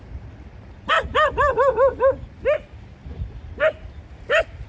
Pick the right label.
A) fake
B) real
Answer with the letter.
B